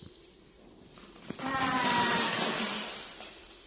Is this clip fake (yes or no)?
yes